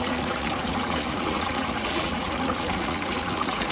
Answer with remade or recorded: remade